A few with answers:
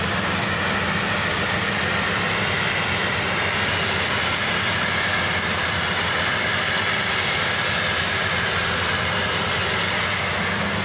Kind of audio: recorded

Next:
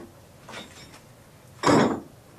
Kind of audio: recorded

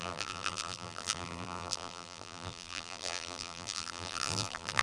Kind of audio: remade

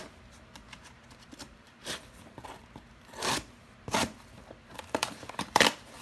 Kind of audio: remade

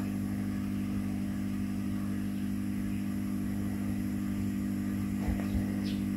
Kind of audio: recorded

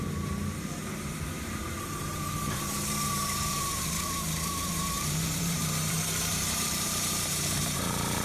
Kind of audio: remade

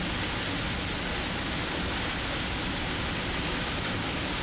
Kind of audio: recorded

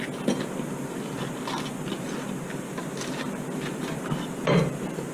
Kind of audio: recorded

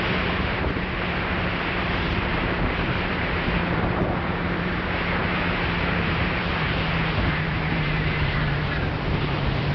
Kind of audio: remade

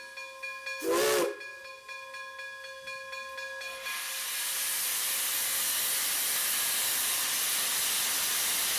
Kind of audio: recorded